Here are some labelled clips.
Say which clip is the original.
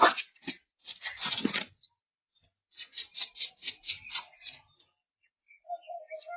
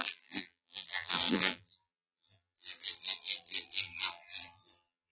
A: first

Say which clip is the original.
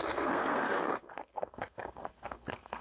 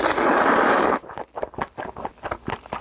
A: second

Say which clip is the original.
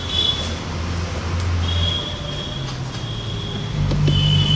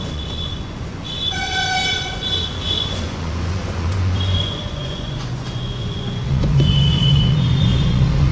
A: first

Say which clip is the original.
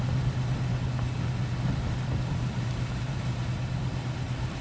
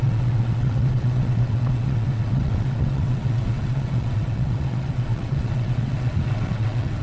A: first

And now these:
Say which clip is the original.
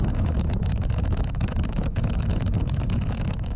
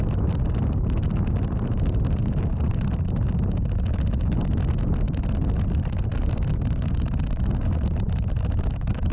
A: second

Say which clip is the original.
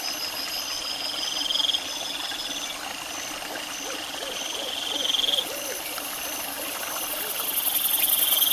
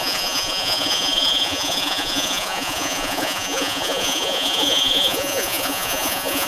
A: first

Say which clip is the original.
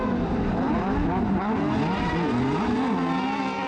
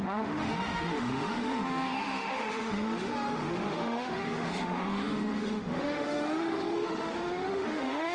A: first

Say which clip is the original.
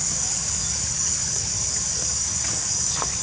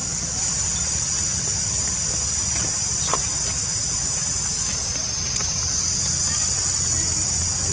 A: second